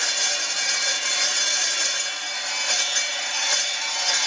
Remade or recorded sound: remade